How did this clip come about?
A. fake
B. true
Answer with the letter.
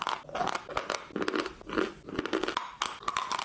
B